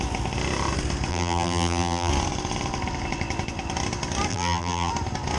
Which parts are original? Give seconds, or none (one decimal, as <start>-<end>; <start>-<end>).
0.0-1.1; 2.1-4.3; 4.9-5.4